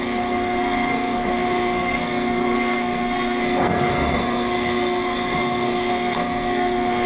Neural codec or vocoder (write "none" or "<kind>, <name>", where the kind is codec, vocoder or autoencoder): codec, SNAC